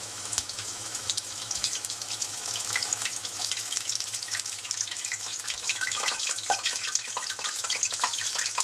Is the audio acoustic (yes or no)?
no